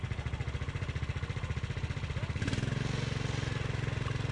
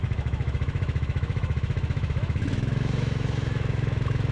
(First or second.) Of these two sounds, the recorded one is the first